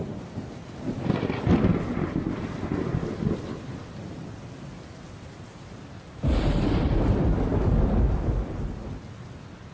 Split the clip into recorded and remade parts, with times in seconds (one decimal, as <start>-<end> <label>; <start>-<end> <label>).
0.0-9.7 recorded